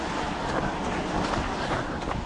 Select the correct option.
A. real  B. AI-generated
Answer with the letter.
A